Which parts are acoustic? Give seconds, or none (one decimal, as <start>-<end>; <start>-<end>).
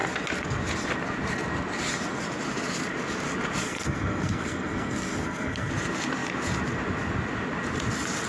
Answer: 0.0-3.6; 5.7-8.3